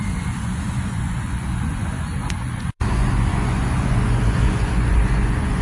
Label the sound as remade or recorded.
remade